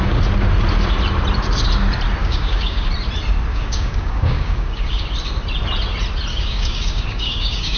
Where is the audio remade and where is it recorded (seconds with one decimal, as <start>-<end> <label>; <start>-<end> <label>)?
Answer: 0.0-2.2 recorded; 2.2-2.9 remade; 2.9-3.5 recorded; 3.5-5.0 remade; 5.0-6.3 recorded; 6.3-7.8 remade